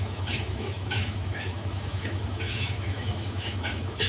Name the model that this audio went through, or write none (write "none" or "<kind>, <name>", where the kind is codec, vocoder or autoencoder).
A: autoencoder, DAC-VAE